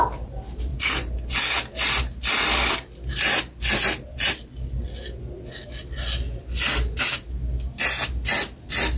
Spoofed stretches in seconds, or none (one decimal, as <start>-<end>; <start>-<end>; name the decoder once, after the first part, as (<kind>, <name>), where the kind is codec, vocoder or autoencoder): none